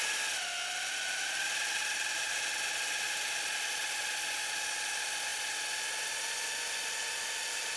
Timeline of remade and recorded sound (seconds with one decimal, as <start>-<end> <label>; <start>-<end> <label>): 0.0-7.8 recorded